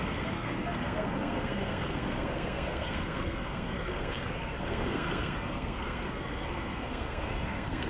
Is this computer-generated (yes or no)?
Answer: yes